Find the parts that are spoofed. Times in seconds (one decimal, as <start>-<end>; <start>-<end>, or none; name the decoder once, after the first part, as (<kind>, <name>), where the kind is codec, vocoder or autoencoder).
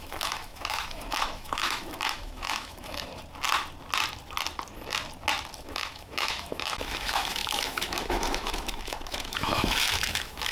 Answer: 0.0-3.1 (autoencoder, DAC-VAE); 5.6-10.5